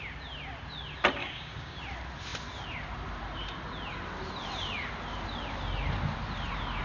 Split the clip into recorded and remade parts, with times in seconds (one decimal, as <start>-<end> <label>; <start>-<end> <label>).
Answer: 0.0-1.2 recorded; 1.2-1.8 remade; 1.8-6.8 recorded